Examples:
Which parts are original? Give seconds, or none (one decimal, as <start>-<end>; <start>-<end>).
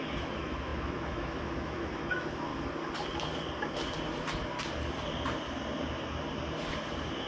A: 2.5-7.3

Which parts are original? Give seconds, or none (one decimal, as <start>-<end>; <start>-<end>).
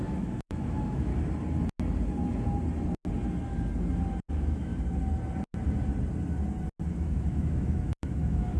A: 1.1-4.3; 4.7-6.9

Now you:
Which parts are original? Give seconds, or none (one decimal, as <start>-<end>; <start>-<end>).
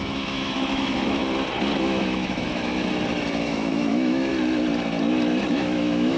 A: 1.2-1.8; 2.7-3.4; 4.3-5.5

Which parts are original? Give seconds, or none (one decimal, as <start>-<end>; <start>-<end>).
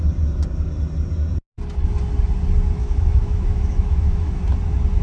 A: 0.0-2.8; 4.4-5.0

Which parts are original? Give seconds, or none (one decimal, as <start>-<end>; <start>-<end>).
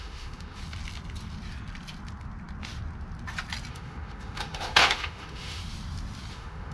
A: 0.6-3.7; 5.6-6.3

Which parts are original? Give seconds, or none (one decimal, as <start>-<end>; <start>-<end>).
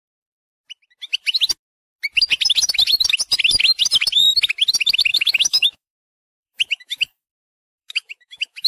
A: 0.0-5.1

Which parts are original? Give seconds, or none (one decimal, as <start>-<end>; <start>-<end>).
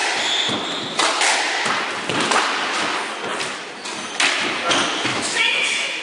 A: 0.0-5.1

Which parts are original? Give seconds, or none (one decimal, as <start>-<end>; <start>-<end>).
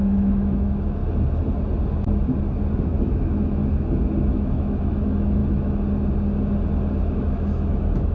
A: 1.0-2.8; 3.6-4.3; 5.4-7.0